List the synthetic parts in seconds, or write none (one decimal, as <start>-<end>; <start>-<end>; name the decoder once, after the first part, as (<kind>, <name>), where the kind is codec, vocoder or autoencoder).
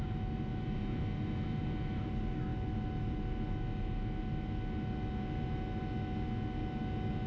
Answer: none